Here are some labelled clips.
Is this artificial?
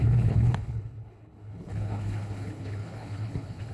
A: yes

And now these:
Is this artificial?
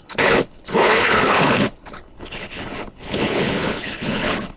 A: yes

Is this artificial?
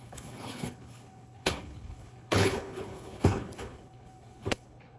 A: yes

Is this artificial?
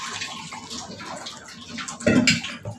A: no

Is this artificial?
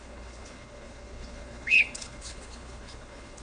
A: yes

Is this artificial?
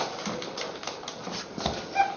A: no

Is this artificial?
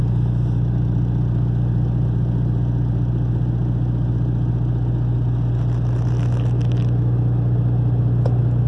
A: no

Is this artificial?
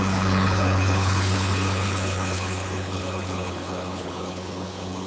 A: yes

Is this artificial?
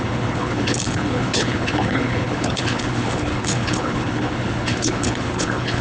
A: yes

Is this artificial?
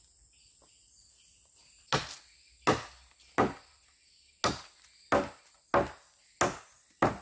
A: no